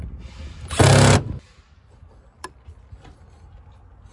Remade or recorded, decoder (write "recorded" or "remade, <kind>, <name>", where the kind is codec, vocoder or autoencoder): recorded